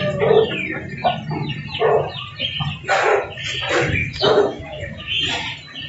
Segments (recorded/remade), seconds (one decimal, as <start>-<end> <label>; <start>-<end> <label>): 0.0-4.0 recorded; 4.0-5.2 remade; 5.2-5.9 recorded